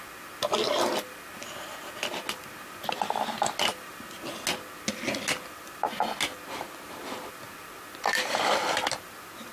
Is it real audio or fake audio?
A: real